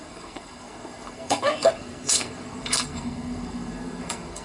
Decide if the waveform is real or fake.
fake